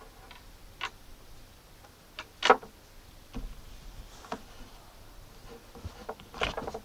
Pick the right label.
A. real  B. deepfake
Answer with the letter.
A